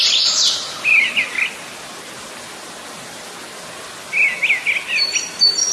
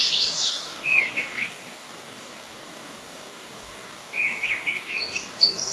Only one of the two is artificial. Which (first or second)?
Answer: second